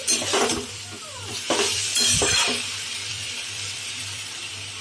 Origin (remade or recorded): remade